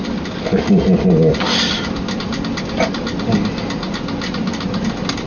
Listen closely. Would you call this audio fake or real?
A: real